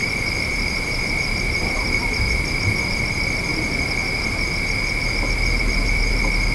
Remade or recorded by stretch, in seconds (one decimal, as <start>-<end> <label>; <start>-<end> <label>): 0.0-3.0 remade; 3.0-6.5 recorded